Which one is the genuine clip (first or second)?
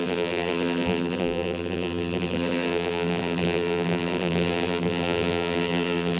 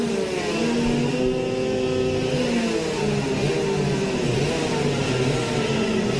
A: second